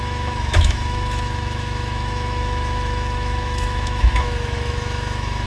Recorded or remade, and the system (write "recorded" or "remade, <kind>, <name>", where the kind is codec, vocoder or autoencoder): remade, autoencoder, DAC-VAE